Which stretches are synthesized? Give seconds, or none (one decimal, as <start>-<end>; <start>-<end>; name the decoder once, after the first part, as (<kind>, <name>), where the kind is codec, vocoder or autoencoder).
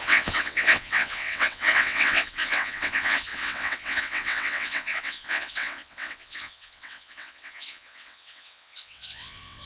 0.0-9.7 (vocoder, WaveNeXt)